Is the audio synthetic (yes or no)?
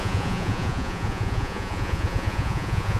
yes